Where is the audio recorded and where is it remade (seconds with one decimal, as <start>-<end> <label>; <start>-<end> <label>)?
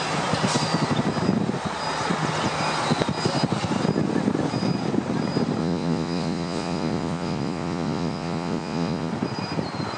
0.0-5.6 recorded; 5.6-9.1 remade; 9.1-10.0 recorded